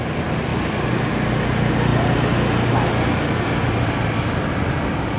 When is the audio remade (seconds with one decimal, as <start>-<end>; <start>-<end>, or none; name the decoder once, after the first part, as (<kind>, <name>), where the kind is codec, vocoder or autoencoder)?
0.5-1.1 (vocoder, BigVGAN v2)